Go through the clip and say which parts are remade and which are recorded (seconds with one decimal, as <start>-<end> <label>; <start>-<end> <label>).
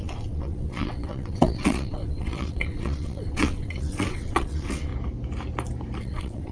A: 0.0-4.9 remade; 4.9-6.0 recorded; 6.0-6.5 remade